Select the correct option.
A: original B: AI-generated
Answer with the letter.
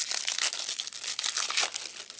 A